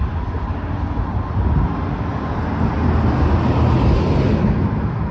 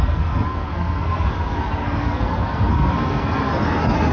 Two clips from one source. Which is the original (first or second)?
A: first